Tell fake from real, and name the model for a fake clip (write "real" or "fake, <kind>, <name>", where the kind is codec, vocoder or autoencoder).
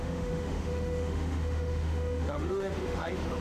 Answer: fake, autoencoder, DAC-VAE